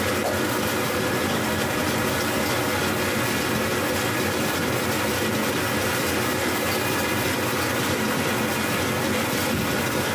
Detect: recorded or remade recorded